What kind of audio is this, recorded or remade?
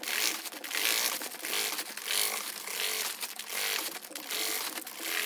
recorded